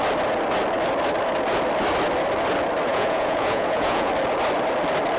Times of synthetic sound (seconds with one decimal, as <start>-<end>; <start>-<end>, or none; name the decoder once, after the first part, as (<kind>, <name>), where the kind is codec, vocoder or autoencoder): 2.9-4.1 (vocoder, Vocos)